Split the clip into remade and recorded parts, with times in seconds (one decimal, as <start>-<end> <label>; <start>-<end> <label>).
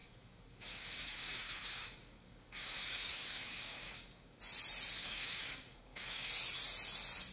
0.0-4.4 remade; 4.4-5.0 recorded; 5.0-6.3 remade; 6.3-7.3 recorded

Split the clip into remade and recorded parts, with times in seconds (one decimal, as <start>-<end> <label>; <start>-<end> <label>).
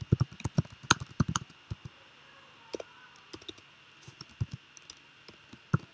0.0-5.9 recorded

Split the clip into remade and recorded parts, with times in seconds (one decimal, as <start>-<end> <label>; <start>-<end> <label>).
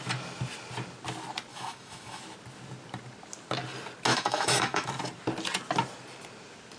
0.0-1.5 recorded; 1.5-2.2 remade; 2.2-4.1 recorded; 4.1-4.9 remade; 4.9-6.8 recorded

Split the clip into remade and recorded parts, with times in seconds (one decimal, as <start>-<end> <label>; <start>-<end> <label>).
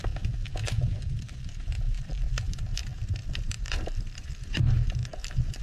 0.0-0.8 recorded; 0.8-2.7 remade; 2.7-3.4 recorded; 3.4-5.0 remade; 5.0-5.6 recorded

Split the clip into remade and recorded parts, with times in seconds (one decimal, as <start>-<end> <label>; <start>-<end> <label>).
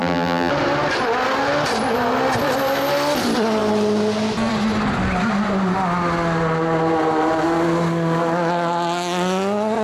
0.0-0.5 remade; 0.5-9.8 recorded